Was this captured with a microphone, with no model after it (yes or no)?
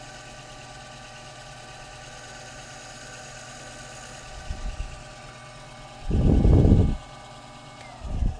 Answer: yes